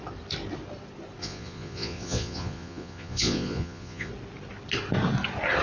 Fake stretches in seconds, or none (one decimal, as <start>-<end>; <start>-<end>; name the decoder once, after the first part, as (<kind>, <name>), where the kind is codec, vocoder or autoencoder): 1.2-4.1 (vocoder, Vocos)